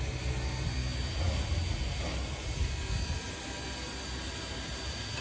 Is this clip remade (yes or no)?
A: no